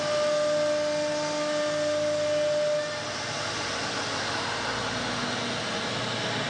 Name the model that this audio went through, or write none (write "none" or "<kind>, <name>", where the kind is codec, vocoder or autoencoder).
none